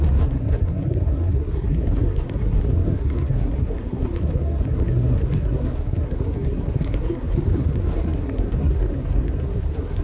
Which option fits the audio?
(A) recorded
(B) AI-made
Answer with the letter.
B